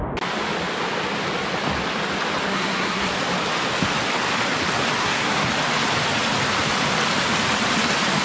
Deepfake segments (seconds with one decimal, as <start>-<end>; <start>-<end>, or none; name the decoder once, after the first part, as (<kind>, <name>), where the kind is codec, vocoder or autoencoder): 2.5-3.1 (codec, SNAC); 5.0-5.5